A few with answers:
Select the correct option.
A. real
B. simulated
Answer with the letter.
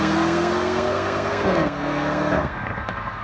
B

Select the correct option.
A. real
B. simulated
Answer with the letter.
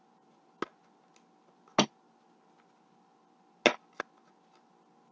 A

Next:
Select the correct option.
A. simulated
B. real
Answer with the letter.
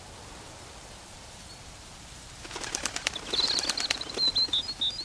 B